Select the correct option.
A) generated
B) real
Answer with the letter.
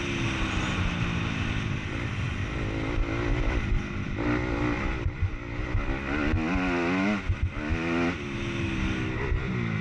B